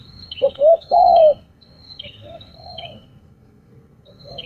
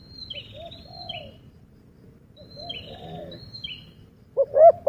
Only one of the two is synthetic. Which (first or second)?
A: first